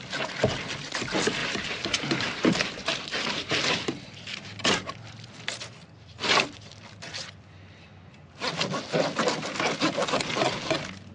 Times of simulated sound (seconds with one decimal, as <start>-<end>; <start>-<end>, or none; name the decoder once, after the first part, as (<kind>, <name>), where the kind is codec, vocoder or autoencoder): 1.4-5.4 (vocoder, BigVGAN v2)

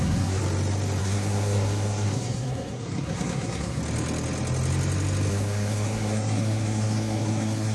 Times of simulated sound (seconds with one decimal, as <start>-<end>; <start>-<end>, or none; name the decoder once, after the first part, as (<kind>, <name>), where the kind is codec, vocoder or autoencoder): 0.0-0.4 (codec, SNAC); 1.0-3.8; 5.3-7.7

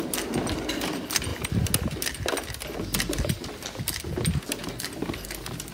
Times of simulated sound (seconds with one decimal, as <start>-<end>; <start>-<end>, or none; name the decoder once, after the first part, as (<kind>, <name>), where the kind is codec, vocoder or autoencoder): none

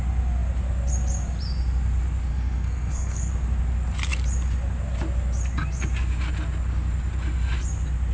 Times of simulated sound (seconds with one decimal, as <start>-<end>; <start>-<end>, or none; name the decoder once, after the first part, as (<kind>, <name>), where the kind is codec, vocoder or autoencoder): 2.3-3.3 (codec, SNAC)

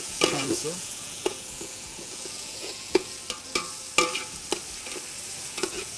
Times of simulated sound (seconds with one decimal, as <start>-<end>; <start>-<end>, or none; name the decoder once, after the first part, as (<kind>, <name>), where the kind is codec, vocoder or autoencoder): 0.0-3.2 (vocoder, Vocos); 5.4-6.0

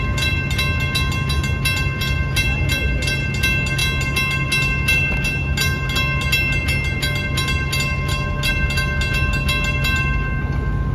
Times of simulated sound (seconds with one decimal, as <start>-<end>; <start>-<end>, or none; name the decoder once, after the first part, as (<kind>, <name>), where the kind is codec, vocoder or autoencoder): none

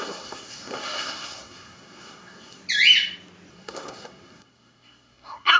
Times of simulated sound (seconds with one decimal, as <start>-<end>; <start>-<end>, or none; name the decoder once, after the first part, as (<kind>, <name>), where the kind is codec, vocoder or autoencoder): 0.0-2.6 (codec, SNAC); 3.5-5.6